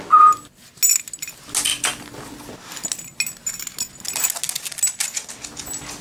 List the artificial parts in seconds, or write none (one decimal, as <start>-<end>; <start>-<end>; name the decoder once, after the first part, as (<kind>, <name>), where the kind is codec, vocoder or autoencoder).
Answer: none

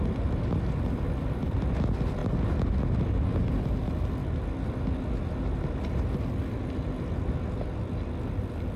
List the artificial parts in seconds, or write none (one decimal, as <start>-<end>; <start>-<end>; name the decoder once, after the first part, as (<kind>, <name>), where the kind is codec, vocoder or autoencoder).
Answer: none